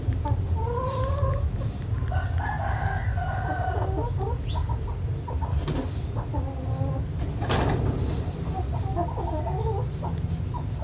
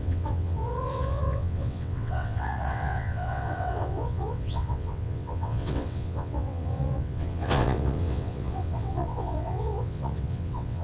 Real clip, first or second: first